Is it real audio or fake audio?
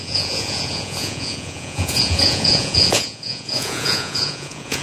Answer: fake